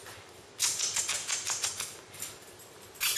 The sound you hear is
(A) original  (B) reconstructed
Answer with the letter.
A